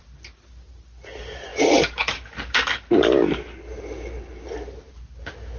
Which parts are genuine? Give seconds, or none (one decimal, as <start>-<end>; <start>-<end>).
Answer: 0.0-5.6

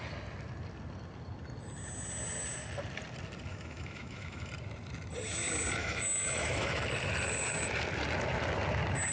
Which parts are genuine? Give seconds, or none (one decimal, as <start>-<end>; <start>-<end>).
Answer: 0.0-3.5; 4.5-5.8; 6.9-9.1